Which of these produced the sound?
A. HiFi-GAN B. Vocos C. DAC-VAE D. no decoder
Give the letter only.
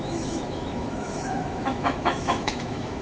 C